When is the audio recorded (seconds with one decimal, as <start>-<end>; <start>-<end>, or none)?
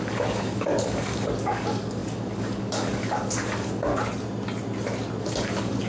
3.9-5.2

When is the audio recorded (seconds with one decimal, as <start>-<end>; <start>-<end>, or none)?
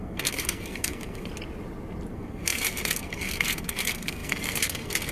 1.3-2.1